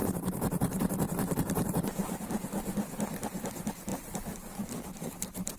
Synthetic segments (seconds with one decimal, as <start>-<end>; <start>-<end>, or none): 0.0-2.2; 3.9-4.6